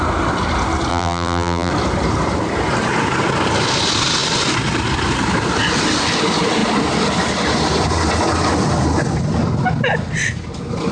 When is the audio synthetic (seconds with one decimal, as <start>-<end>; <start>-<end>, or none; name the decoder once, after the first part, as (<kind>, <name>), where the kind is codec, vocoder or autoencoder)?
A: 0.9-1.7 (vocoder, BigVGAN v2)